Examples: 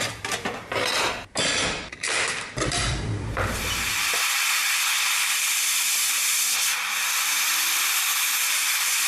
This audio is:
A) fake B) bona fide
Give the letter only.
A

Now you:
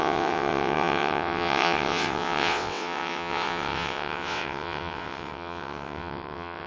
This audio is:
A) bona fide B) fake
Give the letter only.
B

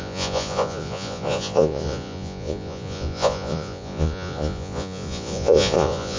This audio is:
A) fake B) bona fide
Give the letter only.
A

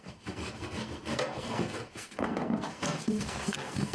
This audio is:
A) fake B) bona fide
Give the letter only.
A